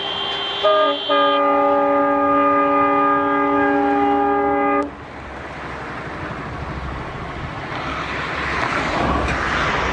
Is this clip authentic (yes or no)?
yes